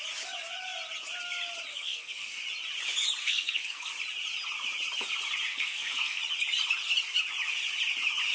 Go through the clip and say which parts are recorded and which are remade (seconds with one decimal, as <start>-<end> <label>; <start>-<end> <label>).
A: 0.0-1.7 recorded; 1.7-2.4 remade; 2.4-3.2 recorded; 3.2-3.9 remade; 3.9-5.5 recorded; 5.5-6.2 remade; 6.2-8.3 recorded